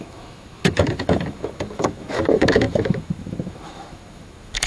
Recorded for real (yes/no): no